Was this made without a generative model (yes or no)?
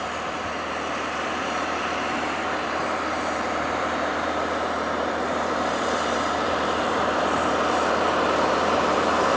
no